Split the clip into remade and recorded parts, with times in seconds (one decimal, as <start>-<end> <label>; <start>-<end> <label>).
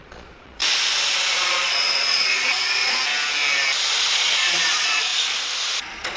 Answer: 0.0-0.6 remade; 0.6-1.3 recorded; 1.3-3.0 remade; 3.0-3.8 recorded; 3.8-5.1 remade; 5.1-5.6 recorded; 5.6-6.2 remade